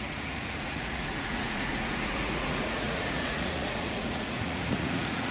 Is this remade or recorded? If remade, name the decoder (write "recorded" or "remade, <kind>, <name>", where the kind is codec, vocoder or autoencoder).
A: remade, vocoder, Vocos